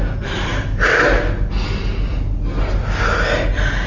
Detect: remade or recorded recorded